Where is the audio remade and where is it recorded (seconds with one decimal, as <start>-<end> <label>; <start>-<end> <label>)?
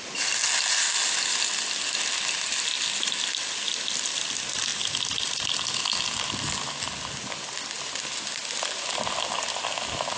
0.0-10.2 recorded